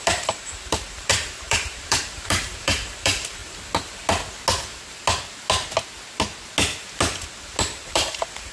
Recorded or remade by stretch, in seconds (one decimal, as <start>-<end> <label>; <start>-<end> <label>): 0.0-3.4 remade; 3.4-7.9 recorded; 7.9-8.5 remade